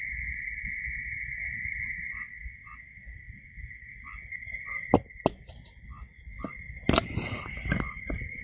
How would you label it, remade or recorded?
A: recorded